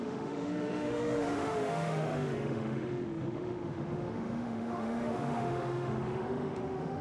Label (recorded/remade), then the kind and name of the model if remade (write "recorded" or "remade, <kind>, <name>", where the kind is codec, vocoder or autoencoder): remade, autoencoder, DAC-VAE